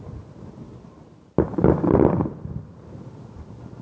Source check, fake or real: real